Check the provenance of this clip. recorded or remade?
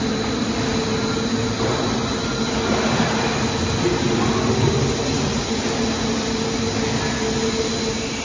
recorded